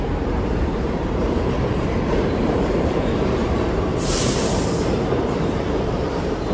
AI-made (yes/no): yes